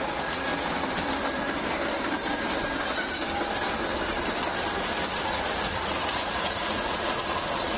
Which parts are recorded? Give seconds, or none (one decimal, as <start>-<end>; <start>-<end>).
0.5-5.2